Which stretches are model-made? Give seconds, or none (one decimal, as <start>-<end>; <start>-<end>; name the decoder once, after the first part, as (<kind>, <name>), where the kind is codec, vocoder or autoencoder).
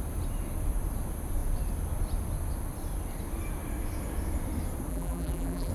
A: 4.9-5.7 (vocoder, BigVGAN v2)